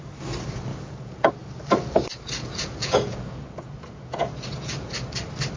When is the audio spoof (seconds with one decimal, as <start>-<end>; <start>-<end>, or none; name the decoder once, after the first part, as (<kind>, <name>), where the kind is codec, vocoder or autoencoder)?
0.7-1.3 (vocoder, Vocos); 2.4-5.0